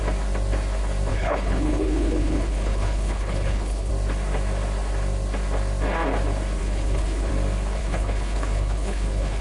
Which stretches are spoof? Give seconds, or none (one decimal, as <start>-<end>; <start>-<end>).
1.1-3.9; 6.6-7.3; 7.8-9.4